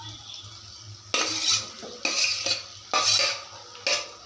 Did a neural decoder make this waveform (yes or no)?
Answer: no